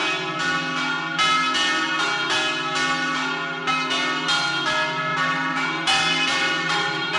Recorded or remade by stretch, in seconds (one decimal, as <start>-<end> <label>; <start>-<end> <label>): 0.0-5.1 recorded; 5.1-7.2 remade